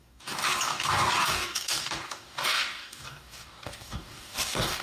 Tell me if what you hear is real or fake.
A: fake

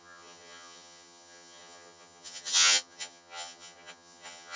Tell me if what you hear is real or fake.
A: fake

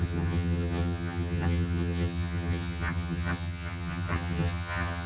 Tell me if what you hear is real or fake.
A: fake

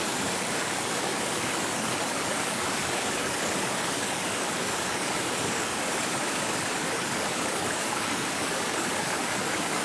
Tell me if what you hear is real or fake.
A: fake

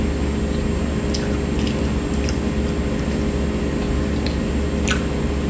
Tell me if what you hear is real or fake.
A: real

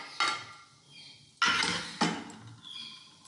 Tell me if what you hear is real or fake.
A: real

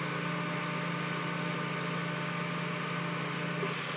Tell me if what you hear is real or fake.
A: real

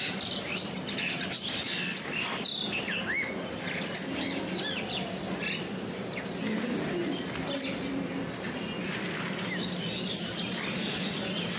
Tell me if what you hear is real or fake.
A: real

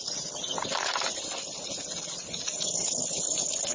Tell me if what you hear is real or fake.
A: real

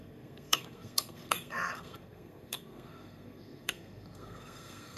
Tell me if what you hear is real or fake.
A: fake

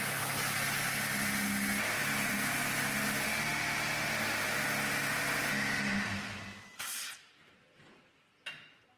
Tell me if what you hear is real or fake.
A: real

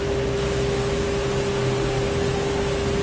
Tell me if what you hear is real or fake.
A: real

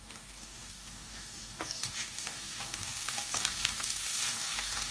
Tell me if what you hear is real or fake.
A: fake